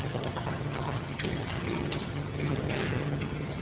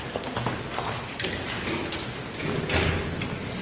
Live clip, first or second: second